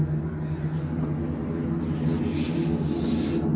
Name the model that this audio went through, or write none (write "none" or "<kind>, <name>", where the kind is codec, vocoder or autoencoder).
none